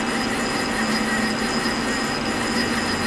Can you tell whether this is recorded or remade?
recorded